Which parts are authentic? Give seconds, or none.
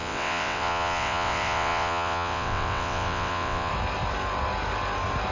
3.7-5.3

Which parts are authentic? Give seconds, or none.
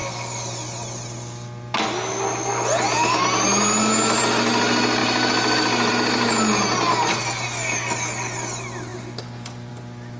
0.0-10.2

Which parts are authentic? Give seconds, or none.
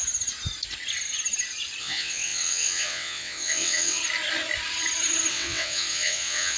0.0-1.8; 4.0-5.3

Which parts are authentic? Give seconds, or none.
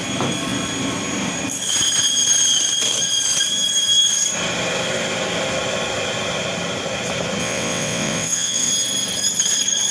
0.0-7.4; 8.7-9.9